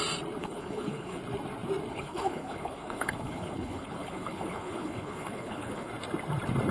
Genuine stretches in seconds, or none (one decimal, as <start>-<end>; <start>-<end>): 0.0-0.4; 1.2-1.9; 5.9-6.7